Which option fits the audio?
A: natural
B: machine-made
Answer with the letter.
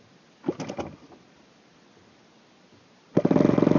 A